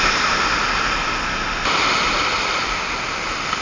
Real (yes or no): yes